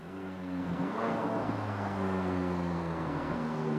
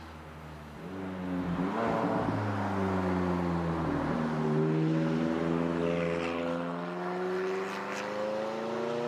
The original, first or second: second